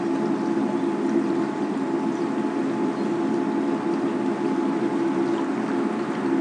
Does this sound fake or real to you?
real